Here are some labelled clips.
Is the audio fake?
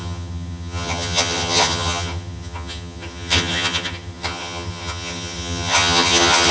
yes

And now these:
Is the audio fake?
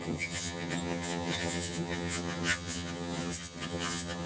yes